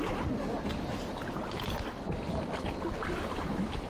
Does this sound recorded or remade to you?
recorded